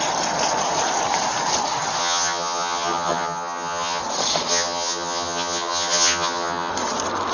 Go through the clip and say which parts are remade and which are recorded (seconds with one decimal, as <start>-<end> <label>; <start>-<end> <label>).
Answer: 0.0-2.0 recorded; 2.0-4.0 remade; 4.0-4.5 recorded; 4.5-6.7 remade; 6.7-7.3 recorded

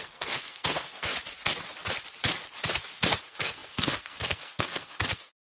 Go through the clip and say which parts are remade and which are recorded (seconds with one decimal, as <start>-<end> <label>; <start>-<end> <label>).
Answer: 0.0-1.1 remade; 1.1-3.2 recorded; 3.2-5.6 remade

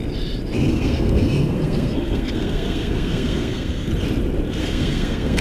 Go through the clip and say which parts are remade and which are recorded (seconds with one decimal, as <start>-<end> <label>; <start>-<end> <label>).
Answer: 0.0-0.7 recorded; 0.7-3.9 remade; 3.9-4.6 recorded; 4.6-5.4 remade

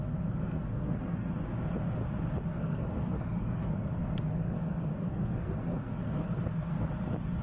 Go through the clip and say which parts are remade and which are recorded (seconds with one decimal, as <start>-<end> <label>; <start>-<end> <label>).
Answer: 0.0-0.4 recorded; 0.4-1.3 remade; 1.3-2.5 recorded; 2.5-6.9 remade; 6.9-7.4 recorded

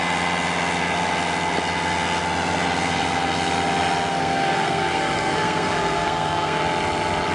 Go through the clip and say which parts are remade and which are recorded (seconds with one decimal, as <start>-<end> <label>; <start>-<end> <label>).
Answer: 0.0-4.1 recorded; 4.1-6.6 remade; 6.6-7.3 recorded